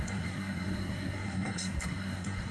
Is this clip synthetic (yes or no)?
yes